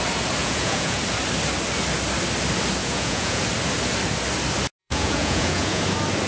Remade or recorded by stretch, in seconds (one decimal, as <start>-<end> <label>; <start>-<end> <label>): 0.0-0.4 recorded; 0.4-1.0 remade; 1.0-2.8 recorded; 2.8-3.4 remade; 3.4-4.8 recorded; 4.8-5.8 remade; 5.8-6.3 recorded